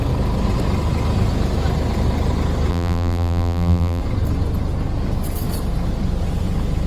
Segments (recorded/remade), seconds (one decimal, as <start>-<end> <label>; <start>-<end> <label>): 0.0-2.7 recorded; 2.7-4.0 remade; 4.0-6.9 recorded